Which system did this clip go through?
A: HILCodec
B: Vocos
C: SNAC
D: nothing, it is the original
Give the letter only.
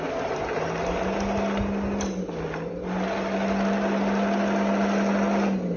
D